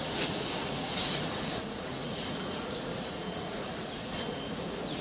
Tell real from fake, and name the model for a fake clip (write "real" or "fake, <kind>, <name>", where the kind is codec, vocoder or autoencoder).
fake, vocoder, Vocos